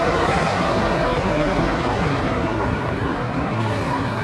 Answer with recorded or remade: remade